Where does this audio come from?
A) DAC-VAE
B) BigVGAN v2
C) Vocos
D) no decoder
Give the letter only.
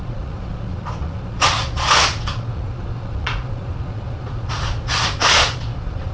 C